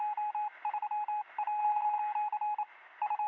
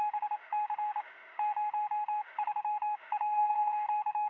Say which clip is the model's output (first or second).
second